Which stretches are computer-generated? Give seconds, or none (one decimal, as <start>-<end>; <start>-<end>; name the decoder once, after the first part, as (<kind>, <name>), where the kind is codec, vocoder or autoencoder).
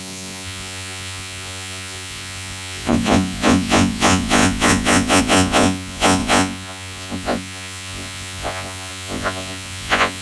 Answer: 0.0-10.2 (vocoder, Vocos)